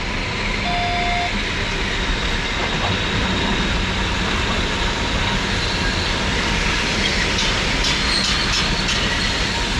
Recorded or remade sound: recorded